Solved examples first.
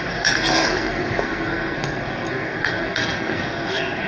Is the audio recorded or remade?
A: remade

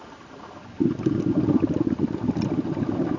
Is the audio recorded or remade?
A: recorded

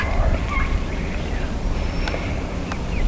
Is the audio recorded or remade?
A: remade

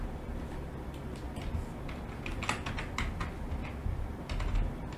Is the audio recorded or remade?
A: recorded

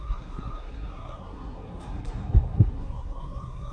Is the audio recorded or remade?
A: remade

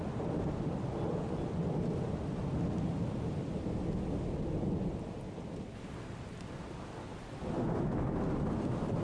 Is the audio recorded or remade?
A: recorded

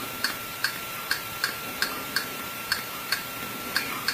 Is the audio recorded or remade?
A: remade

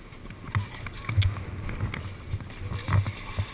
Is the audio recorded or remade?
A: recorded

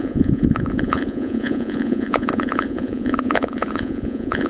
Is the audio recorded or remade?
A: remade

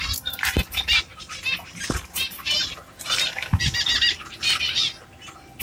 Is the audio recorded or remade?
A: recorded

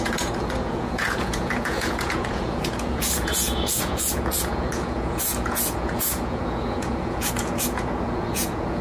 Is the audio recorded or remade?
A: remade